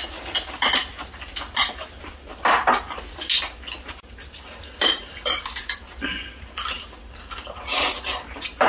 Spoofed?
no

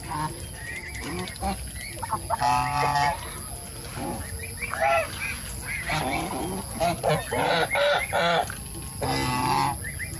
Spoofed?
no